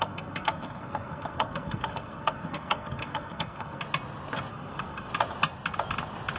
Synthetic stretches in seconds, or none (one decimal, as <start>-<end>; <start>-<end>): 0.0-3.8; 4.5-5.1